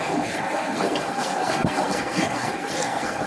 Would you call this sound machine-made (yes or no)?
yes